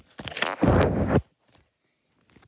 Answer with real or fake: real